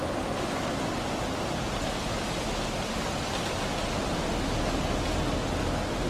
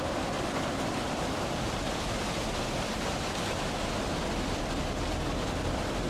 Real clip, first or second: first